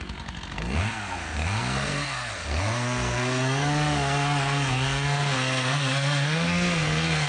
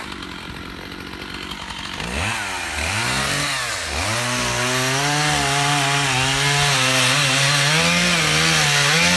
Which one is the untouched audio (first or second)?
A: second